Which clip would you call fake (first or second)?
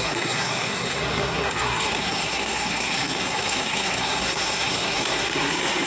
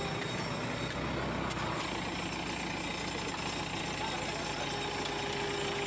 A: first